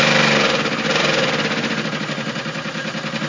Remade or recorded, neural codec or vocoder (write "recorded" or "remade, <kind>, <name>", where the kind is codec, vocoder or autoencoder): recorded